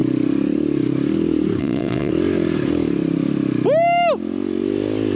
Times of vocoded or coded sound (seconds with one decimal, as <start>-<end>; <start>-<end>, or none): 1.6-2.1

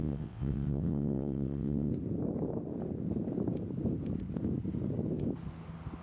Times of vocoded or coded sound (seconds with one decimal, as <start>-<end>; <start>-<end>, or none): 0.0-1.9

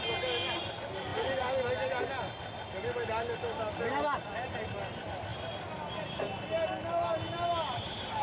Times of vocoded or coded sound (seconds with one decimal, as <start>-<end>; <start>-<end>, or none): none

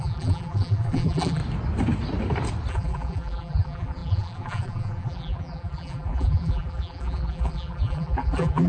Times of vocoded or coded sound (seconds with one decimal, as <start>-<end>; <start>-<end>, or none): 0.0-1.4; 2.7-8.7

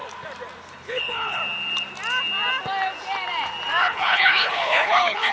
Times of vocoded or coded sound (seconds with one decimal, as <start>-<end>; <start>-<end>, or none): 0.7-1.4; 3.8-5.3